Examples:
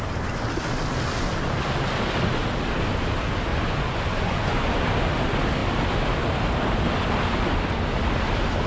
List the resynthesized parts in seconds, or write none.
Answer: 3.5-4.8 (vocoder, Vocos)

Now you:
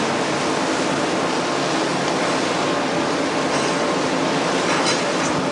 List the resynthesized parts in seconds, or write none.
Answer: none

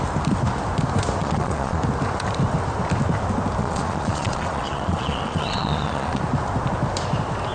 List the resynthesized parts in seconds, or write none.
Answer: 1.2-1.8 (vocoder, Vocos); 3.6-6.2

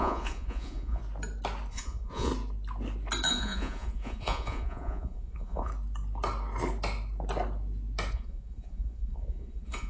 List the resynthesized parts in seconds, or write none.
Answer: 0.0-1.0 (vocoder, Vocos); 1.7-2.3; 3.3-5.7; 8.1-9.9

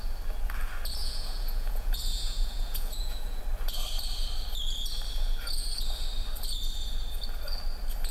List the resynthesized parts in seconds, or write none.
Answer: 1.0-3.4 (vocoder, Vocos)

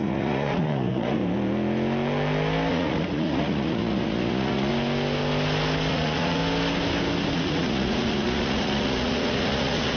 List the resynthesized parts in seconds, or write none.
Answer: 0.0-1.2 (vocoder, Vocos); 2.7-4.7; 5.9-6.4; 7.3-10.0

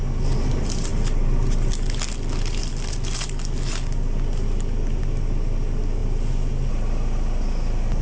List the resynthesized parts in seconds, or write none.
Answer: none

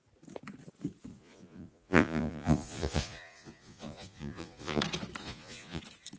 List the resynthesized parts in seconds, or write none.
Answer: 1.1-4.8 (vocoder, Vocos); 5.2-5.8